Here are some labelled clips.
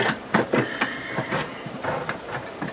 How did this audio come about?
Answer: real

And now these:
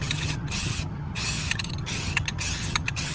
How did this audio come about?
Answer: fake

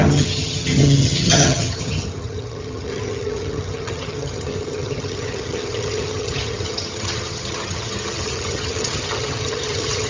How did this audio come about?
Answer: fake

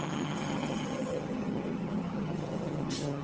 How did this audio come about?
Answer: fake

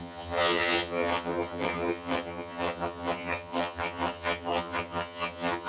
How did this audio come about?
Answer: fake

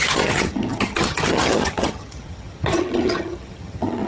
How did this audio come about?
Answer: fake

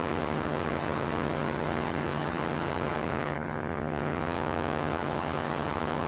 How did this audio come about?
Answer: fake